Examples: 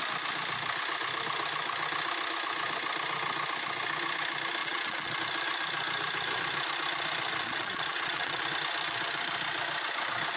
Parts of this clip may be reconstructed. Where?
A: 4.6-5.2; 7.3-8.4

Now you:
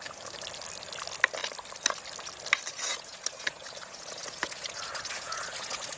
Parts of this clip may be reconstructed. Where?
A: 2.9-6.0

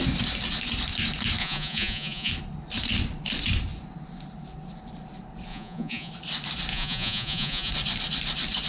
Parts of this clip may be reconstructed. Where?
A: 1.4-2.3; 5.5-6.1; 6.7-7.7